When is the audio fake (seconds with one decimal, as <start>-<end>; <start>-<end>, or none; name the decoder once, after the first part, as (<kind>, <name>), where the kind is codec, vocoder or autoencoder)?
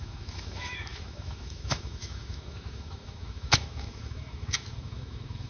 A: 0.0-5.5 (autoencoder, DAC-VAE)